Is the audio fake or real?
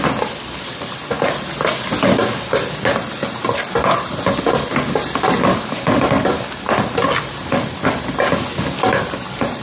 real